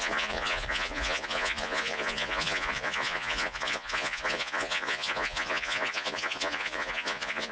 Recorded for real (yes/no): no